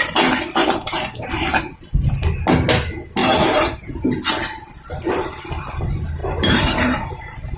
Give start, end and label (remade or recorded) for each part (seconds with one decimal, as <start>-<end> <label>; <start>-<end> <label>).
0.0-0.6 recorded; 0.6-1.6 remade; 1.6-3.2 recorded; 3.2-4.1 remade; 4.1-6.2 recorded; 6.2-7.6 remade